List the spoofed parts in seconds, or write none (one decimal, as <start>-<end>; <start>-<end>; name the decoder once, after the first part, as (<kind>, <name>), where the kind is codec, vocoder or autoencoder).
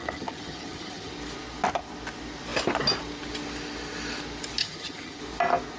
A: 0.0-1.1 (vocoder, HiFi-GAN); 4.6-5.2